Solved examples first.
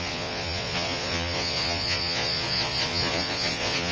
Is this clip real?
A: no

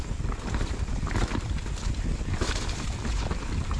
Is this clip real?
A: yes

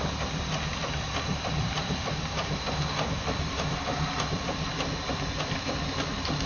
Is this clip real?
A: yes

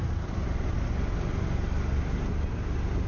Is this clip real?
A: yes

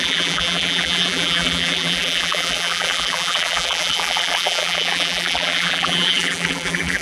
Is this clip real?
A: no